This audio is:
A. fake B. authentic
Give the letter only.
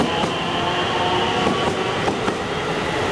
B